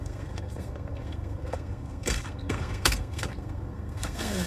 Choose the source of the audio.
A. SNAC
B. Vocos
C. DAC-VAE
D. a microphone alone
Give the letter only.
A